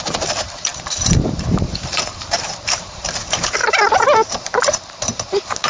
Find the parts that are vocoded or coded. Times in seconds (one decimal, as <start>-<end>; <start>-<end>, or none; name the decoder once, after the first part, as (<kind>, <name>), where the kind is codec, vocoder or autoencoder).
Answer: 0.0-5.7 (vocoder, BigVGAN v2)